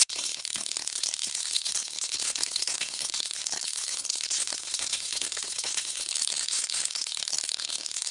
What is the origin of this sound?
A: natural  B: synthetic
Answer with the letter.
B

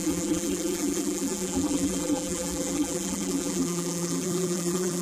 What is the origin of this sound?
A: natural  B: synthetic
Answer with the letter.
B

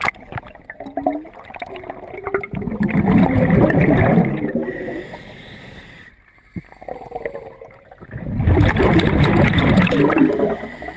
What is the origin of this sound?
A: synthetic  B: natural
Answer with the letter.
B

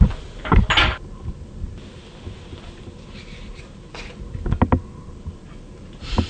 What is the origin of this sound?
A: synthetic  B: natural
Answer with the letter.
B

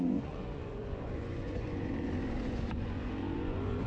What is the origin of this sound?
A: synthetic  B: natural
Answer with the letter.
A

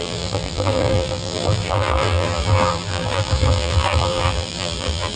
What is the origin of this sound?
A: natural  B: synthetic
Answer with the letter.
B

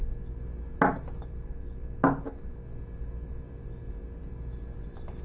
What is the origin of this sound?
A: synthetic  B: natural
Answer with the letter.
B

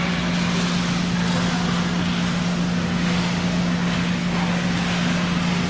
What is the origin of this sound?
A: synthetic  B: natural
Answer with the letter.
B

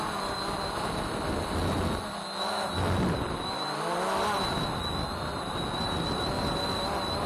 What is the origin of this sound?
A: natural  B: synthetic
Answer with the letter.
A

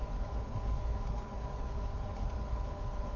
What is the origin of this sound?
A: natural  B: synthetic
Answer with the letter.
B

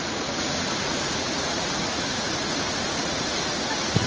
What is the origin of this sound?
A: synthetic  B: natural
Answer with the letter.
A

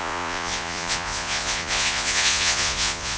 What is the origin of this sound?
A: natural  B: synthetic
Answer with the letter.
B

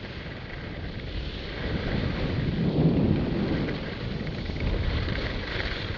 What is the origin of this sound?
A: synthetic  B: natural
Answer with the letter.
B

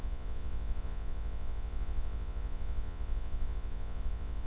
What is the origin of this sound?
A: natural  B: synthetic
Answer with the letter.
B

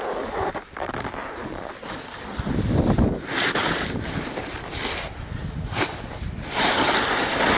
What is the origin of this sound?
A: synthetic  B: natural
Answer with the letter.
B